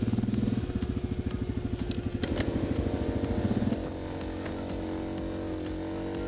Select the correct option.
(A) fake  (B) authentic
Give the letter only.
B